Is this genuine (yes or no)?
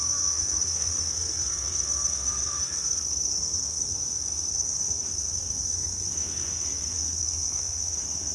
no